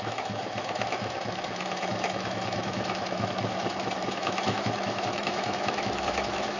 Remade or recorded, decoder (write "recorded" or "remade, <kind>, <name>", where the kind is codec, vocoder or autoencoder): remade, autoencoder, DAC-VAE